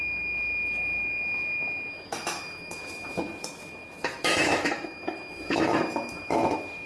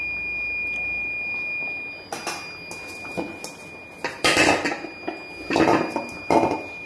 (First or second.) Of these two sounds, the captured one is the second